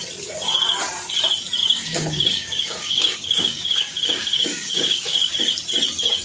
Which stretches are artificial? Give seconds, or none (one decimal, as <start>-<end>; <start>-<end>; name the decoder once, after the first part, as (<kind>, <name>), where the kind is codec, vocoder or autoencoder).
1.6-5.3 (codec, DAC)